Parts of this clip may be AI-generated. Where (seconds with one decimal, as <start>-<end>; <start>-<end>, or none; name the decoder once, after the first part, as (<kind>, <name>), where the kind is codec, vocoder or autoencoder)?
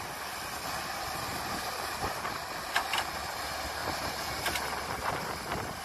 3.8-4.6 (vocoder, BigVGAN v2)